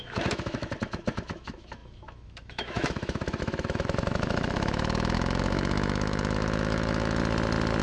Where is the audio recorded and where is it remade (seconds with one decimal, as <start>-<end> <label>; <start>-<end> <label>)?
0.0-7.2 remade; 7.2-7.8 recorded